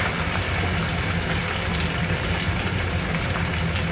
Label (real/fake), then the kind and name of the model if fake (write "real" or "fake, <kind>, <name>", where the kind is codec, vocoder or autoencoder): real